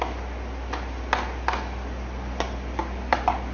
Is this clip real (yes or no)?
yes